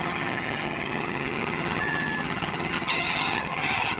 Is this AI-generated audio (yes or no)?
yes